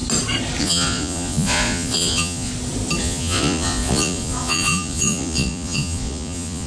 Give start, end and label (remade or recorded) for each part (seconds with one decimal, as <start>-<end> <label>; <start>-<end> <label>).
0.0-0.6 recorded; 0.6-2.5 remade; 2.5-3.0 recorded; 3.0-6.7 remade